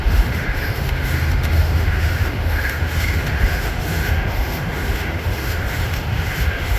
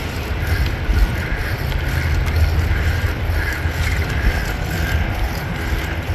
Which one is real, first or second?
second